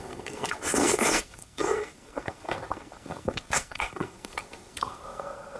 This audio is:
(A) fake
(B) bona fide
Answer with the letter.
A